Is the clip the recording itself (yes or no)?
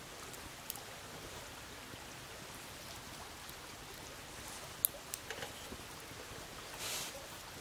yes